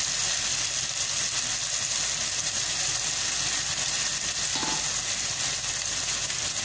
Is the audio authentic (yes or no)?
yes